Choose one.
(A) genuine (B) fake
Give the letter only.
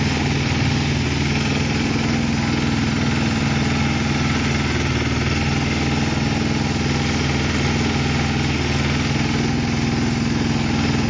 A